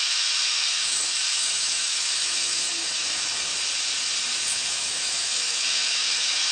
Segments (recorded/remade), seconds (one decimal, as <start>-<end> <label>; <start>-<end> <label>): 0.0-3.5 remade; 3.5-4.5 recorded; 4.5-6.5 remade